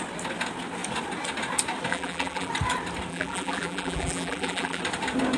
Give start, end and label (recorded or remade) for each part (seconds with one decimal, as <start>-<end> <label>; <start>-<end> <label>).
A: 0.0-1.9 recorded; 1.9-2.5 remade; 2.5-3.1 recorded; 3.1-4.8 remade; 4.8-5.4 recorded